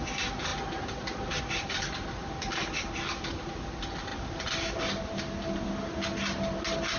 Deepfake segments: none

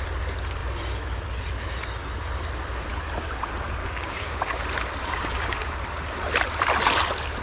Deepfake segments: 3.8-4.6 (codec, DAC); 5.0-5.7

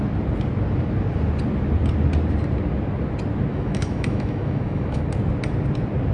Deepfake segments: 3.5-5.0 (autoencoder, DAC-VAE)

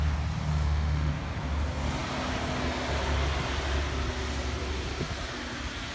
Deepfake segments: 0.5-1.1 (autoencoder, DAC-VAE)

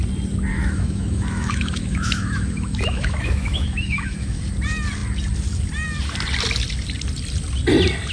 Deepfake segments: 0.5-4.4 (autoencoder, DAC-VAE)

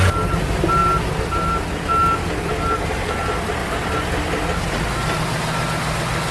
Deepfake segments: 3.6-4.4 (vocoder, BigVGAN v2)

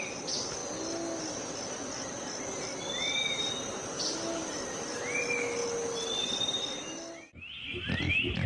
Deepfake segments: none